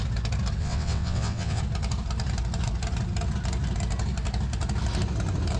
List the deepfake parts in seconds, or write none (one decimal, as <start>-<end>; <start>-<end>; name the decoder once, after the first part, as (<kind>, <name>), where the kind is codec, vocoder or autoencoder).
0.6-1.6 (vocoder, WaveNeXt)